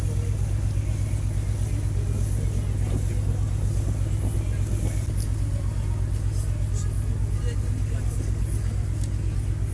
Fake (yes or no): no